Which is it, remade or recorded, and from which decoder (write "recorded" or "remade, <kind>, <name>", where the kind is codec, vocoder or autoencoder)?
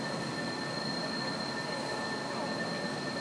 recorded